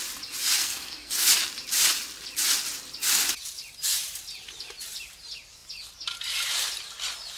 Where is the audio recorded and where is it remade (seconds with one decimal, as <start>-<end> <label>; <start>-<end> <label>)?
0.0-0.6 recorded; 0.6-1.3 remade; 1.3-7.4 recorded